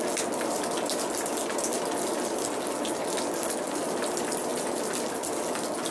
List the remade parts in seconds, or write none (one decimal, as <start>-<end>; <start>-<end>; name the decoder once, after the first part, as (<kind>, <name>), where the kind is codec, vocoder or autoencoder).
none